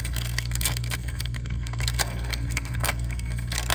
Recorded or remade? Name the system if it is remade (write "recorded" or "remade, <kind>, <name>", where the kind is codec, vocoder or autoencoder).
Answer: remade, codec, SNAC